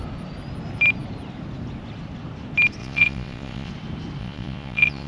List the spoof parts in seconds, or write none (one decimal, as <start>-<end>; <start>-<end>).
2.8-3.7; 4.2-5.1